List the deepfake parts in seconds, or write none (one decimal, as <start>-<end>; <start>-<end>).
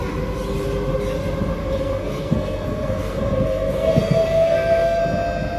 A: 1.6-5.0